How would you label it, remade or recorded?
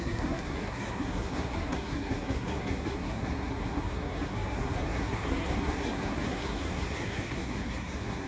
remade